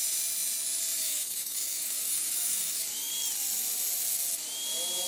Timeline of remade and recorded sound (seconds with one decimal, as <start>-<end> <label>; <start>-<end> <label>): 0.0-0.9 recorded; 0.9-3.1 remade; 3.1-5.1 recorded